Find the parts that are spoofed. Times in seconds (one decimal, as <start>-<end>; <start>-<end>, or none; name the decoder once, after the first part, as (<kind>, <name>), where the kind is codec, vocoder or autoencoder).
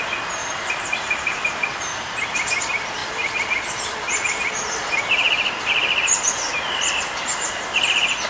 0.4-1.9 (vocoder, BigVGAN v2); 3.0-5.5